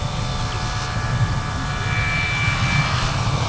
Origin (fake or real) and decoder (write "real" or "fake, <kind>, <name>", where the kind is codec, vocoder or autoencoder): real